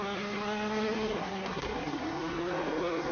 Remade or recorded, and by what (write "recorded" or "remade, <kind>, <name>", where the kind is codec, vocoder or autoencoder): remade, codec, SNAC